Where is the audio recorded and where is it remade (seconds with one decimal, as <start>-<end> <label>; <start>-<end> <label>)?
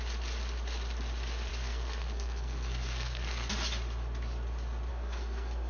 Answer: 0.0-1.5 recorded; 1.5-3.5 remade; 3.5-4.9 recorded; 4.9-5.7 remade